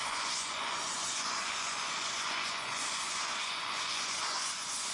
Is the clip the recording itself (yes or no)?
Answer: no